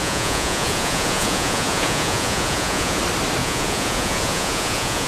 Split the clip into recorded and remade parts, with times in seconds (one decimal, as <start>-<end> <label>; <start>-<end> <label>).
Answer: 0.0-3.0 remade; 3.0-3.4 recorded; 3.4-5.1 remade